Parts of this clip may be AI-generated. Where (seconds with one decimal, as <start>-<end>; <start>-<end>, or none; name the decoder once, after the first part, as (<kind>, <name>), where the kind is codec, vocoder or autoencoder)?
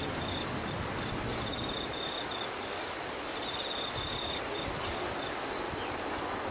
none